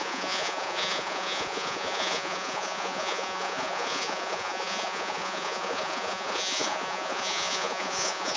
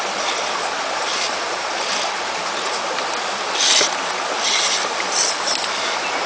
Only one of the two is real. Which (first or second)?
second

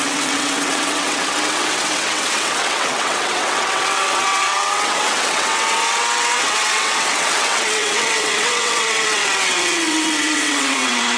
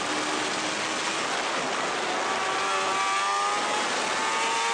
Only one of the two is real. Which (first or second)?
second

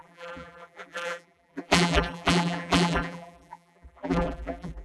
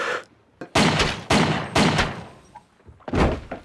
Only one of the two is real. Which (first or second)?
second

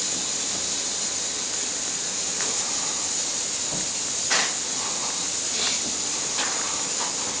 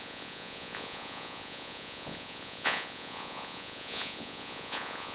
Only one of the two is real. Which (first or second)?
first